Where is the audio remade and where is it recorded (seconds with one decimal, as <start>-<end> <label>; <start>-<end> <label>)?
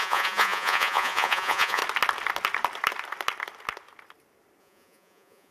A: 0.0-1.8 remade; 1.8-4.6 recorded; 4.6-5.5 remade